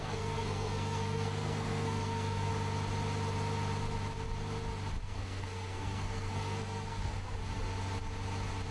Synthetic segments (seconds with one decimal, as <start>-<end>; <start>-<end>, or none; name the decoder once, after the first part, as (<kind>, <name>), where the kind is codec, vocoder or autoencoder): 0.0-2.5 (codec, SNAC); 5.0-7.4